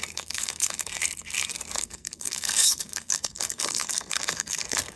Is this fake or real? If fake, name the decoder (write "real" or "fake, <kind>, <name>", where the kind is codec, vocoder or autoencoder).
fake, codec, SNAC